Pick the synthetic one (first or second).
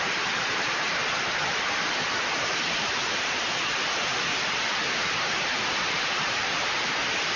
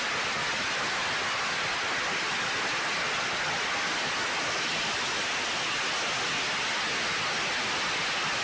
first